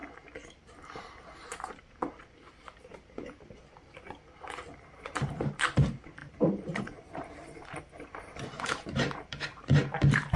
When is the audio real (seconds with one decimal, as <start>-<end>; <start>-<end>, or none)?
3.6-4.9